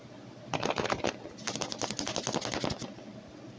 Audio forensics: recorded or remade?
recorded